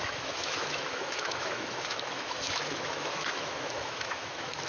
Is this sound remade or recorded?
remade